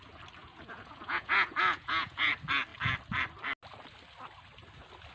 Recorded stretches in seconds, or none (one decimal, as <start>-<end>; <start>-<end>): 0.0-0.4; 2.3-5.1